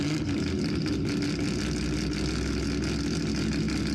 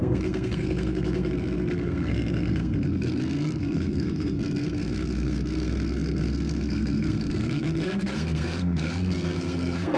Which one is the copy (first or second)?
second